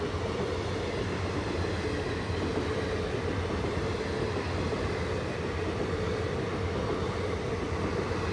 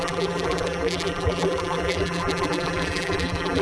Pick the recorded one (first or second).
first